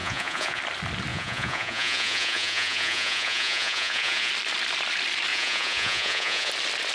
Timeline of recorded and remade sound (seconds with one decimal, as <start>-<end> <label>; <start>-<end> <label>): 0.0-0.6 remade; 0.6-1.1 recorded; 1.1-4.3 remade; 4.3-5.3 recorded; 5.3-6.5 remade; 6.5-6.9 recorded